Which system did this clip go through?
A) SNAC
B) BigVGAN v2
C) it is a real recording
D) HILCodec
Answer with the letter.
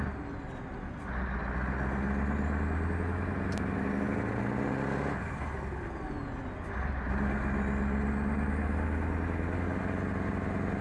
C